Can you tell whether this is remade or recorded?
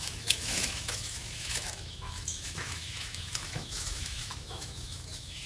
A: remade